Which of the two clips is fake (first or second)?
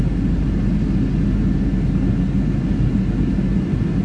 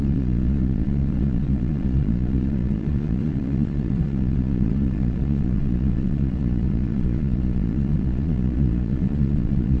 second